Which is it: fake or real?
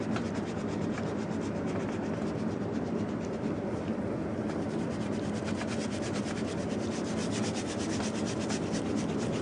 fake